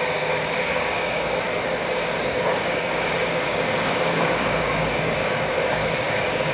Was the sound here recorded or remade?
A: remade